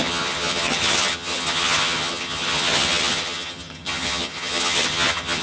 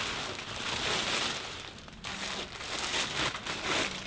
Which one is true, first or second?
second